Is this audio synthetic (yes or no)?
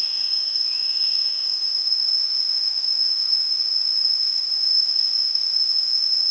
yes